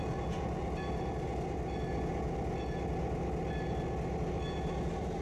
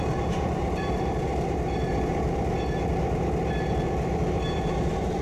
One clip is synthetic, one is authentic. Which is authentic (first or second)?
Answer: first